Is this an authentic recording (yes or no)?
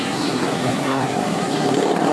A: no